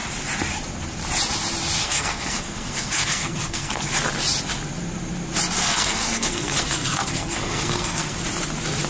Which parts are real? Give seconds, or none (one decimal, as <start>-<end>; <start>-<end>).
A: 0.0-1.8; 3.7-5.6; 8.2-8.9